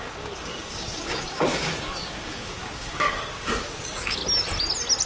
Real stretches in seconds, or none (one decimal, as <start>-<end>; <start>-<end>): 4.2-5.1